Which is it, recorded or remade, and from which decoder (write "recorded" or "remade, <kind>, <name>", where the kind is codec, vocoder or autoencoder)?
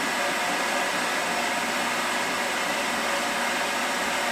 recorded